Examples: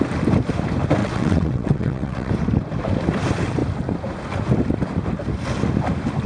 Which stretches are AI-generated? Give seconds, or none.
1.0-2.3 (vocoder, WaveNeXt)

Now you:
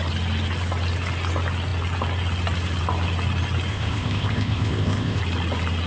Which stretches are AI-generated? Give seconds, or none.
3.7-5.2 (codec, ZipCodec)

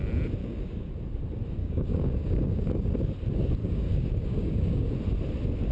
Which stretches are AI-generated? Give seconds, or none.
0.4-0.9 (codec, DAC); 1.6-2.9; 3.6-4.9

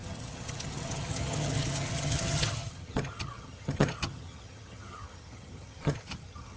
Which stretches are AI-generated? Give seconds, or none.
0.0-6.6 (vocoder, HiFi-GAN)

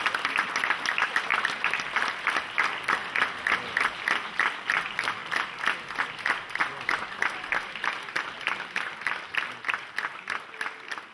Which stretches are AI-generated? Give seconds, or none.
none

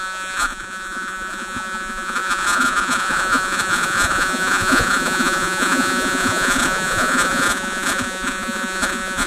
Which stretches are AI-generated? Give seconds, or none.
0.0-9.3 (vocoder, Vocos)